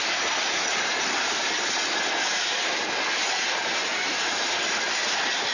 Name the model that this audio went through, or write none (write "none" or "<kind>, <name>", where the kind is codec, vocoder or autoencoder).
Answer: none